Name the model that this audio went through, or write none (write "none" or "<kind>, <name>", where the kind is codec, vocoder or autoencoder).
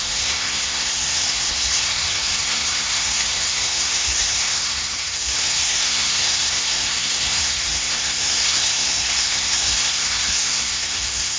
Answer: codec, SNAC